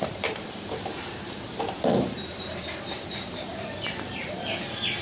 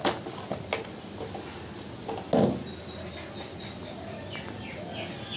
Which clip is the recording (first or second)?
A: second